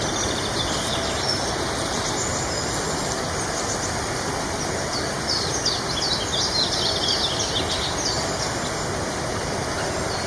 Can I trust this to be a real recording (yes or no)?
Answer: yes